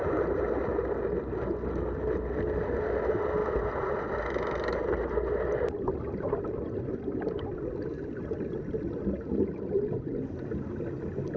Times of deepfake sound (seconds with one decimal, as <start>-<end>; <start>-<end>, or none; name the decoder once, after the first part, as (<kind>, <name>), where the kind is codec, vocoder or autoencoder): none